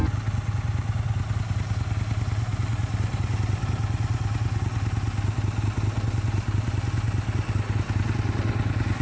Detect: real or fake real